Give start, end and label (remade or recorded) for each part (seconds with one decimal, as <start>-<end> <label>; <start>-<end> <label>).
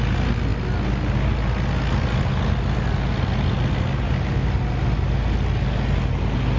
0.0-6.6 recorded